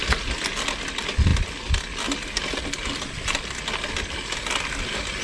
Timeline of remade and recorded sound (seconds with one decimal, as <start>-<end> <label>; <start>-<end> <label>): 0.0-5.2 recorded